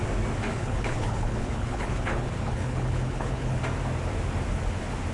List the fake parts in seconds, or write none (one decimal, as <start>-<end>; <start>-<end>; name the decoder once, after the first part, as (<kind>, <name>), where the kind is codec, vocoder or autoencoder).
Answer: 0.5-3.6 (codec, HILCodec)